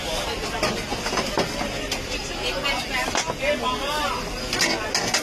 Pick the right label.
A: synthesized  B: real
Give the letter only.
B